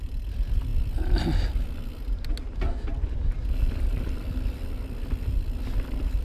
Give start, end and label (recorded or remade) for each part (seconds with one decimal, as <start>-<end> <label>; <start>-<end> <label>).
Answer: 0.0-6.2 recorded